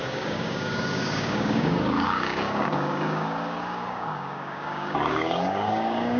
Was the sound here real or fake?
fake